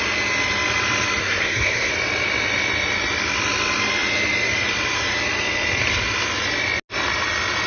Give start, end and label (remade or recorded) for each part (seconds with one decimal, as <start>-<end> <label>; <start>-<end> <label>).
0.0-1.2 recorded; 1.2-1.9 remade; 1.9-7.7 recorded

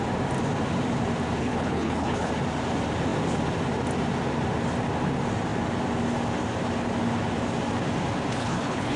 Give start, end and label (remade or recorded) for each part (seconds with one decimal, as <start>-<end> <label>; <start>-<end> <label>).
0.0-1.4 recorded; 1.4-2.3 remade; 2.3-8.4 recorded; 8.4-9.0 remade

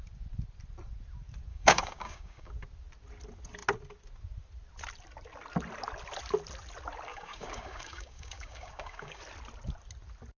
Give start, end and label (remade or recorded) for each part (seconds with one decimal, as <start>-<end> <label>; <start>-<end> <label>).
0.0-1.5 recorded; 1.5-2.5 remade; 2.5-7.1 recorded; 7.1-9.2 remade; 9.2-10.4 recorded

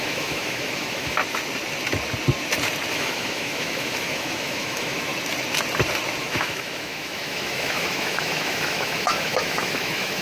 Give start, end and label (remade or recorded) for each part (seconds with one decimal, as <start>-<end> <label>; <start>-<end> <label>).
0.0-1.2 remade; 1.2-2.9 recorded; 2.9-5.1 remade; 5.1-6.2 recorded; 6.2-10.2 remade

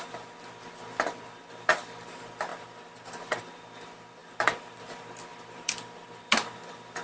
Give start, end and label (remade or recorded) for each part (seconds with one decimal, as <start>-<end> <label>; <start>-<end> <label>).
0.0-2.5 recorded; 2.5-3.4 remade; 3.4-4.2 recorded; 4.2-4.8 remade; 4.8-5.3 recorded; 5.3-6.2 remade; 6.2-7.0 recorded

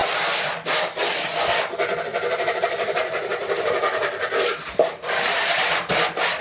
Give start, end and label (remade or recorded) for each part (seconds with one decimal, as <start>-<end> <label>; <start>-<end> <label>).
0.0-2.1 recorded; 2.1-5.9 remade; 5.9-6.4 recorded

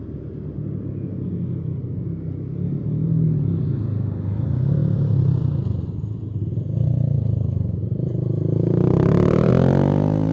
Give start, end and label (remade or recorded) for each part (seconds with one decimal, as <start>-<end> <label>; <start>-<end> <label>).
0.0-4.8 recorded; 4.8-5.4 remade; 5.4-6.2 recorded; 6.2-9.5 remade; 9.5-10.3 recorded